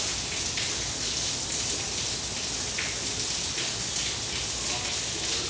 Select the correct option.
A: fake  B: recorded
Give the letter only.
B